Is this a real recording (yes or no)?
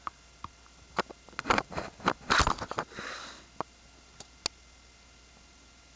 yes